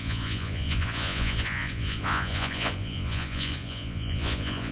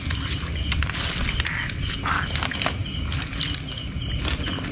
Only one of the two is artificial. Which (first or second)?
first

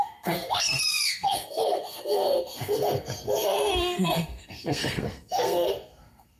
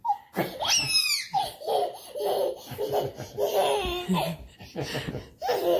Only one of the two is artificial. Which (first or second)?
first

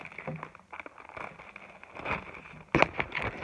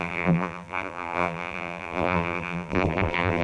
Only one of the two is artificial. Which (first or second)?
second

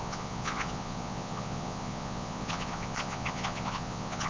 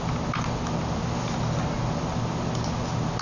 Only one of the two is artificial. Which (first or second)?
first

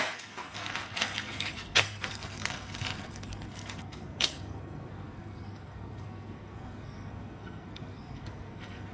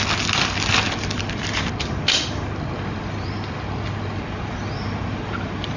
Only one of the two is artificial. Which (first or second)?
first